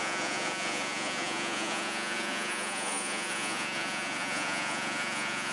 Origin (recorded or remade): remade